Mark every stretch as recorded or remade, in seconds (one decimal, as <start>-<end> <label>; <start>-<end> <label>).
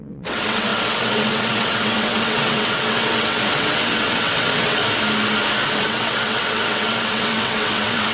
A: 0.0-4.8 remade; 4.8-5.8 recorded; 5.8-8.1 remade